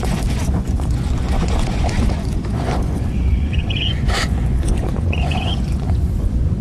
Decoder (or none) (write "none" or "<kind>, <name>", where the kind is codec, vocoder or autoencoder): vocoder, Vocos